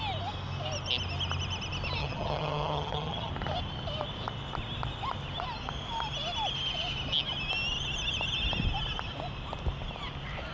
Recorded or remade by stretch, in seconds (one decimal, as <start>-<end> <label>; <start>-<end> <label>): 0.0-2.0 recorded; 2.0-3.3 remade; 3.3-10.5 recorded